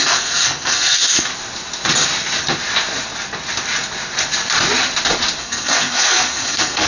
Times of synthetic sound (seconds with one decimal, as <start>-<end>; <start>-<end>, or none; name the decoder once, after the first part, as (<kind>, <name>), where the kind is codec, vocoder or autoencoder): 0.0-1.3 (codec, SNAC); 5.4-6.9